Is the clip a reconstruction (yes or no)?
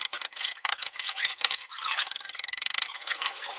yes